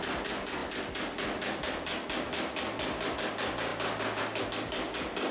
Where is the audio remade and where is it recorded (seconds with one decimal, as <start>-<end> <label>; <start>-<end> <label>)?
0.0-5.3 recorded